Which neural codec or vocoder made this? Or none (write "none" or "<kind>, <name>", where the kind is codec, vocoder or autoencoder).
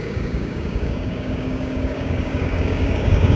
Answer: codec, DAC